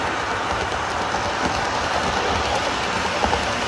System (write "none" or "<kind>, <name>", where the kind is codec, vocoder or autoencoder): none